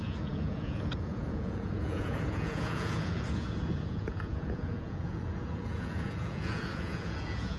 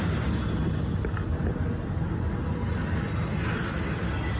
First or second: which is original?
second